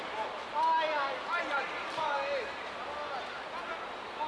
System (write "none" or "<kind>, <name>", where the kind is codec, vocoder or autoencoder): none